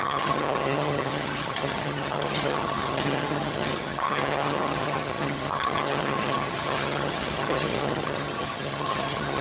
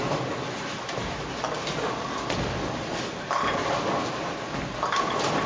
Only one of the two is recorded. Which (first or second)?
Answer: second